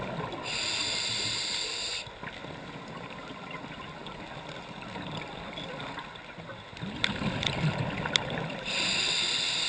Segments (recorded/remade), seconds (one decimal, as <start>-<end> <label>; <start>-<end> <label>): 0.0-9.7 recorded

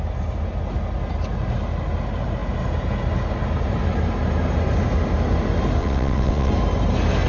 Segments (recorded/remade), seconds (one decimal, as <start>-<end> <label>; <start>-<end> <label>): 0.0-5.8 recorded; 5.8-6.5 remade; 6.5-7.3 recorded